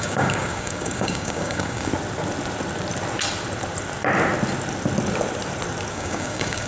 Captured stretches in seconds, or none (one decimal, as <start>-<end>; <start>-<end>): 1.9-5.9